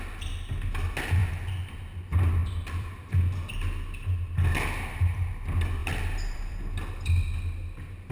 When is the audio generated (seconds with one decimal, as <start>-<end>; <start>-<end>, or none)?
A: 2.4-3.1; 5.8-6.6